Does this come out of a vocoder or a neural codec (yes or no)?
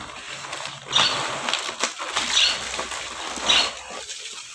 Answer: yes